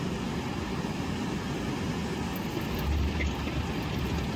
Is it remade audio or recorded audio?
recorded